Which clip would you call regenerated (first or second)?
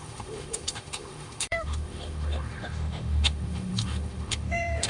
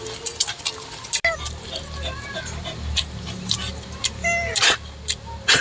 first